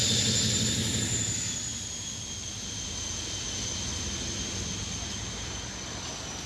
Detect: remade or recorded recorded